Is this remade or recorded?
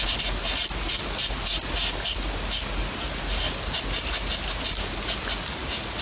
recorded